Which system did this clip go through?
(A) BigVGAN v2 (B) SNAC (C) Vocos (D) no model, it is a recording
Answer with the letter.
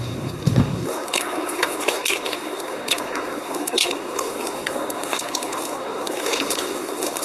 B